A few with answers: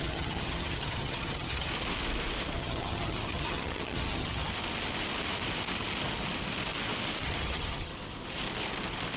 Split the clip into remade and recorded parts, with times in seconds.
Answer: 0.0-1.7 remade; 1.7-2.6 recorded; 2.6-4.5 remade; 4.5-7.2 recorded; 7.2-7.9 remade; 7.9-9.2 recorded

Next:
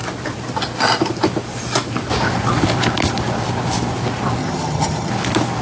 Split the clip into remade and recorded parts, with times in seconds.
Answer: 0.0-4.4 recorded; 4.4-5.1 remade; 5.1-5.6 recorded

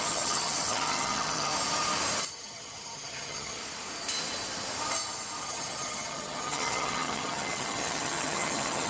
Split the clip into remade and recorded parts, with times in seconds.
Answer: 0.0-1.5 remade; 1.5-2.3 recorded; 2.3-3.6 remade; 3.6-5.4 recorded; 5.4-8.9 remade

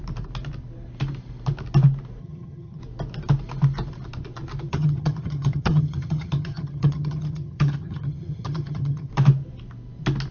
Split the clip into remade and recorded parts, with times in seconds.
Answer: 0.0-2.2 recorded; 2.2-2.8 remade; 2.8-4.7 recorded; 4.7-9.1 remade; 9.1-10.3 recorded

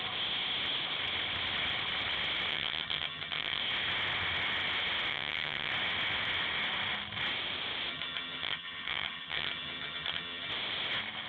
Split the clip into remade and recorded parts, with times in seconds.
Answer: 0.0-2.5 recorded; 2.5-3.6 remade; 3.6-5.1 recorded; 5.1-5.7 remade; 5.7-7.9 recorded; 7.9-10.5 remade; 10.5-11.3 recorded

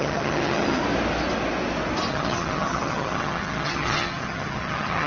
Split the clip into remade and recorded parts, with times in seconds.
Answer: 0.0-0.8 remade; 0.8-2.1 recorded; 2.1-5.1 remade

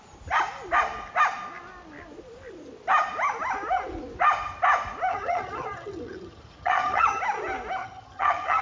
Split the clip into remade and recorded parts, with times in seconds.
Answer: 0.0-5.1 recorded; 5.1-7.2 remade; 7.2-7.8 recorded; 7.8-8.6 remade